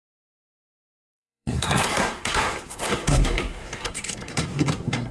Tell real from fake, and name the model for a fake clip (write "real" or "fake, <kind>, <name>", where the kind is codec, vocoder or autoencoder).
fake, codec, SNAC